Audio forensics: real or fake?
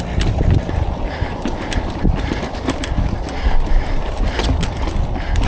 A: real